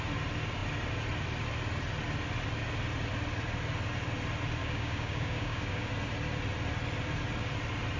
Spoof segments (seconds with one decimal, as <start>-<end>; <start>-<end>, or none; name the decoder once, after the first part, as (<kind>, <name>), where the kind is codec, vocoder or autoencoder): 4.6-5.9 (codec, DAC)